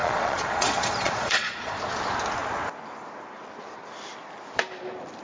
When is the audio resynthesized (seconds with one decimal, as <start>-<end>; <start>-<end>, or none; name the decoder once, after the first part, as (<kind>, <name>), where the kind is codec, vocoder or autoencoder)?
0.0-1.8 (vocoder, Vocos)